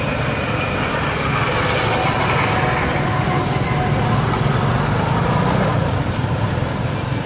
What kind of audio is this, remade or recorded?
recorded